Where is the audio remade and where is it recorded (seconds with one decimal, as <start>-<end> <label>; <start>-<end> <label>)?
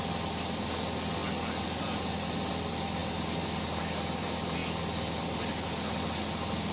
0.0-6.7 recorded